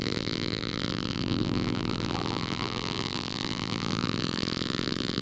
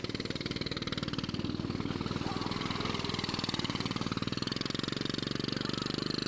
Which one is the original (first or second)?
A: second